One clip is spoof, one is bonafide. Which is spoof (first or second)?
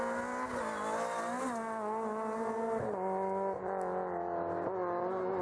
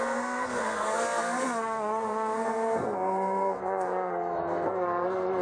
second